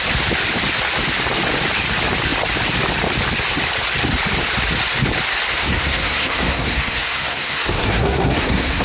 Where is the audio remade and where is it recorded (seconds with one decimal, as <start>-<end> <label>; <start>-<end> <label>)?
0.0-5.5 recorded; 5.5-8.8 remade